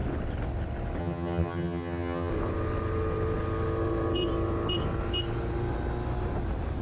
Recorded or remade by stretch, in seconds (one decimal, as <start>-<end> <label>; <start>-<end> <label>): 0.0-1.0 recorded; 1.0-2.3 remade; 2.3-6.8 recorded